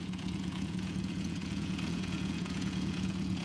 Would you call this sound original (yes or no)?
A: no